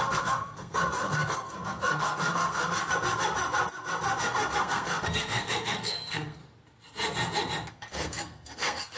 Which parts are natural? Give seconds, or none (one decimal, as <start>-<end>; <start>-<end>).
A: 2.8-4.2; 6.4-7.7